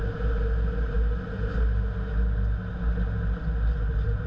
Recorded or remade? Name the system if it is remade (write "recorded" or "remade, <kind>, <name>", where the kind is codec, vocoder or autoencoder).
recorded